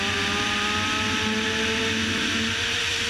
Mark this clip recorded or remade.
recorded